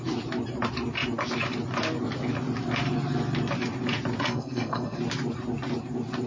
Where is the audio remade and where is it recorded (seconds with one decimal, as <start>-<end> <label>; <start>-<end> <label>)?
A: 0.0-4.3 recorded; 4.3-5.0 remade; 5.0-6.3 recorded